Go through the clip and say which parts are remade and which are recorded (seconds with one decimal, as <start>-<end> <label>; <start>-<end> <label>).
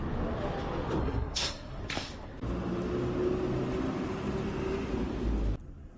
0.0-1.0 recorded; 1.0-1.8 remade; 1.8-6.0 recorded